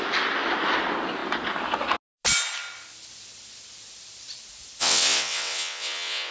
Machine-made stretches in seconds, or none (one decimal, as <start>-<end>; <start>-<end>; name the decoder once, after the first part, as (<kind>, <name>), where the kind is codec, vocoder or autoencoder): 4.8-6.3 (vocoder, WaveNeXt)